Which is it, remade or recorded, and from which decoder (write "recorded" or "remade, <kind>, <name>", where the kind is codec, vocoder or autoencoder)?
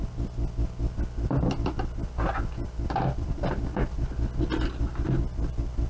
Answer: recorded